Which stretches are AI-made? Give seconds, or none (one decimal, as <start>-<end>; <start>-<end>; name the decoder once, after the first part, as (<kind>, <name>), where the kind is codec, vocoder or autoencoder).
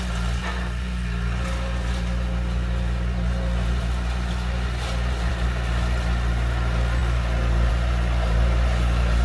none